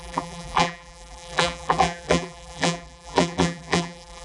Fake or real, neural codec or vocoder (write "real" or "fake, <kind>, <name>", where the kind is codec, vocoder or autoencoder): fake, vocoder, BigVGAN v2